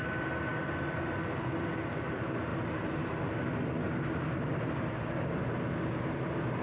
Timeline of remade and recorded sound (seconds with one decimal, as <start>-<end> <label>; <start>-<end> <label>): 0.0-6.6 recorded